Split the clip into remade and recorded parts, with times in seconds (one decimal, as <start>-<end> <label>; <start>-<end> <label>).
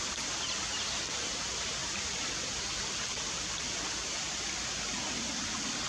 0.0-5.9 recorded